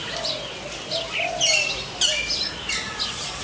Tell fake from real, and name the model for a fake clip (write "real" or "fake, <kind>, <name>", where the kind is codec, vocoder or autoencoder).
real